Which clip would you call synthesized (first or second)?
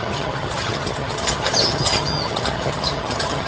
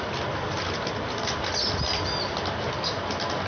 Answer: first